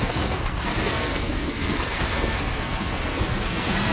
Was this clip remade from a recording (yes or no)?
yes